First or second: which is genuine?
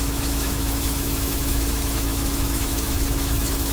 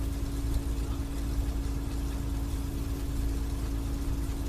second